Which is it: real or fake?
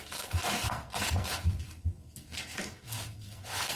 fake